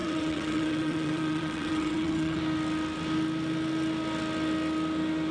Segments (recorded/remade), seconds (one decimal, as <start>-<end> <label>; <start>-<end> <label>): 0.0-2.4 remade; 2.4-5.3 recorded